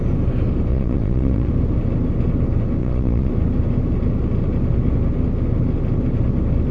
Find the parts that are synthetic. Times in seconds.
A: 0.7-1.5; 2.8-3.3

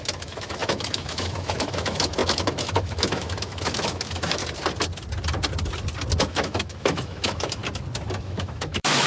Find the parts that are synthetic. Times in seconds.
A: 0.0-4.4; 6.2-7.6; 8.2-9.1

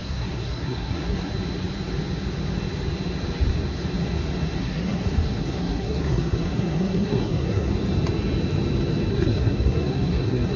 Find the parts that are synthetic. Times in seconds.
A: 0.0-1.3; 4.6-7.7; 9.1-10.6

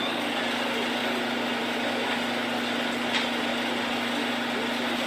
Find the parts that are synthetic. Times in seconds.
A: none